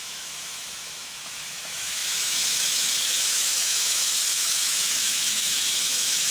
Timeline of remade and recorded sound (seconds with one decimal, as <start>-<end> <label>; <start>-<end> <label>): 0.0-6.3 remade